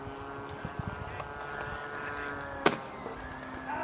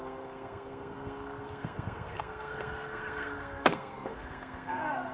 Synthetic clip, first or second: second